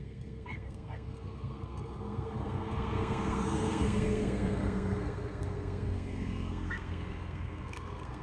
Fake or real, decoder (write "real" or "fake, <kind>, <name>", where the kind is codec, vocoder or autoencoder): fake, codec, SNAC